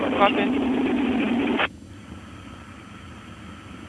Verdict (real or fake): real